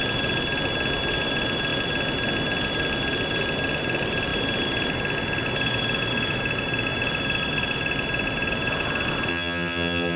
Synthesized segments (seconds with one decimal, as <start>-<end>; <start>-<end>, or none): 9.3-10.2